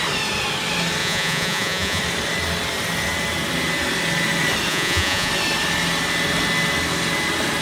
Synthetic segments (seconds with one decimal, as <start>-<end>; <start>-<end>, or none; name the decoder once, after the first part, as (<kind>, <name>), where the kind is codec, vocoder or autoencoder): 1.0-2.0 (vocoder, Vocos); 4.7-5.3